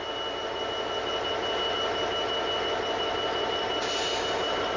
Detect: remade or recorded recorded